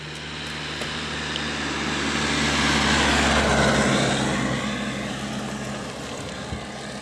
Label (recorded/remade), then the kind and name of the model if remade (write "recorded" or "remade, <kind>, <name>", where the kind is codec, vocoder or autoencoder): recorded